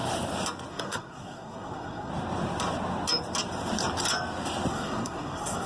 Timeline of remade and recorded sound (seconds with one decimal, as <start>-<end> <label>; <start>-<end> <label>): 0.0-0.7 recorded; 0.7-2.1 remade; 2.1-4.7 recorded; 4.7-5.7 remade

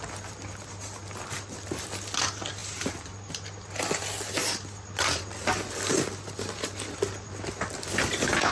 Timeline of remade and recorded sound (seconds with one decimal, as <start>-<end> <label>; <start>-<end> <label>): 0.0-8.5 recorded

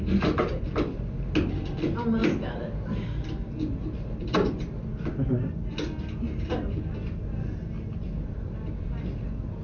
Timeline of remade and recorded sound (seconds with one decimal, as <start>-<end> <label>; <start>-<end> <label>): 0.0-9.6 recorded

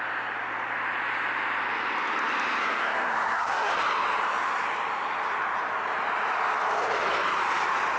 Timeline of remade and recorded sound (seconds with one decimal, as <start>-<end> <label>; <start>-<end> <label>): 0.0-2.6 recorded; 2.6-3.7 remade; 3.7-8.0 recorded

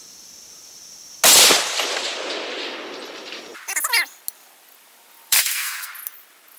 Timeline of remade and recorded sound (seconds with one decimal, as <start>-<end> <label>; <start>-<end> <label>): 0.0-5.3 recorded; 5.3-5.9 remade; 5.9-6.6 recorded

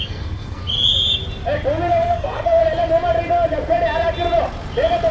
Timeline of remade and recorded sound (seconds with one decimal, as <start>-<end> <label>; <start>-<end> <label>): 0.0-0.6 remade; 0.6-1.9 recorded; 1.9-2.6 remade; 2.6-5.1 recorded

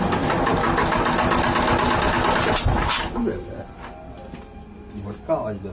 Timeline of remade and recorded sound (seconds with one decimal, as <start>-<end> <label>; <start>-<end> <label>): 0.0-5.7 recorded

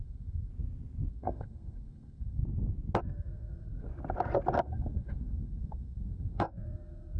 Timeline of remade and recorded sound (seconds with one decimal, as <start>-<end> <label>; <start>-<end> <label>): 0.0-0.5 remade; 0.5-1.1 recorded; 1.1-2.4 remade; 2.4-3.0 recorded; 3.0-3.9 remade; 3.9-4.6 recorded; 4.6-7.2 remade